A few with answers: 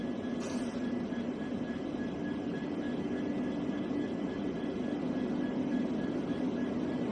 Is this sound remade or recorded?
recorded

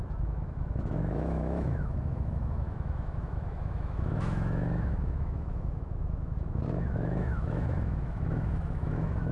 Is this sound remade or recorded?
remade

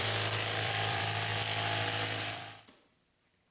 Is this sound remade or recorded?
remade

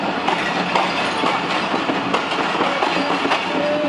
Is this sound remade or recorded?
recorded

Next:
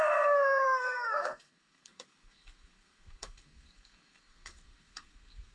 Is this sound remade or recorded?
remade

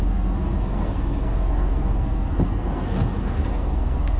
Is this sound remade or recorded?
remade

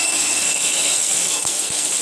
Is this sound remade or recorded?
remade